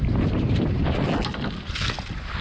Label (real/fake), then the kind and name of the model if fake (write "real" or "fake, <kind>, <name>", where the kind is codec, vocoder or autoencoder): real